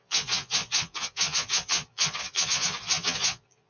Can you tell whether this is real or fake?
fake